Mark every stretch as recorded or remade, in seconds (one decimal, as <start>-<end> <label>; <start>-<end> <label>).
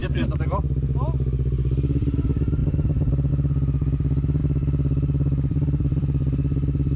0.0-0.6 remade; 0.6-2.6 recorded; 2.6-3.3 remade; 3.3-4.4 recorded; 4.4-7.0 remade